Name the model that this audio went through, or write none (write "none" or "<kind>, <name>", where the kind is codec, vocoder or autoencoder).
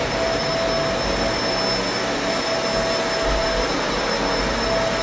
none